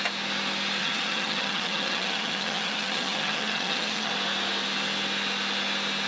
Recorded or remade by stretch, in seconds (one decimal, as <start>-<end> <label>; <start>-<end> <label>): 0.0-0.8 recorded; 0.8-4.1 remade; 4.1-6.1 recorded